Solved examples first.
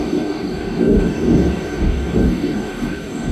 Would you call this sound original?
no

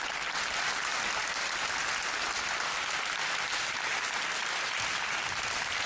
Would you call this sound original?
yes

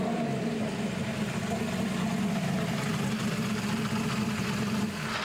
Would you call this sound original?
yes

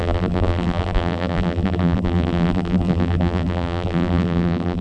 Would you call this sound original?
no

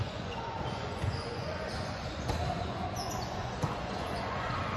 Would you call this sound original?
no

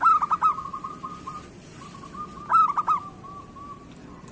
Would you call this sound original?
yes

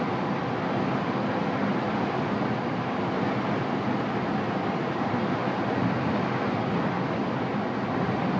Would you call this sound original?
yes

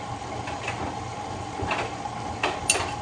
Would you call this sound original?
yes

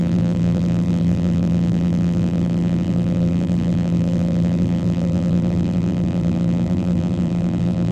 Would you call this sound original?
no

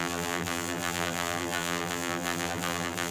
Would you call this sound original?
no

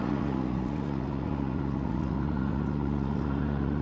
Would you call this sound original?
no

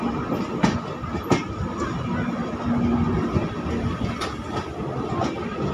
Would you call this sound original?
yes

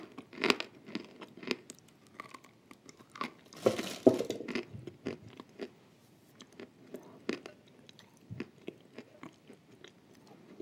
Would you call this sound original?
yes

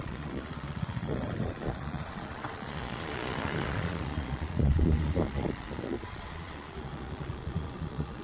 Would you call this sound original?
no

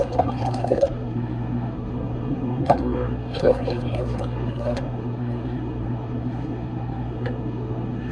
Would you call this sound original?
no